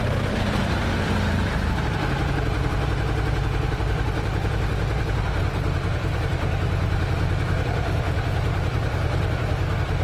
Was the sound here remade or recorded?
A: remade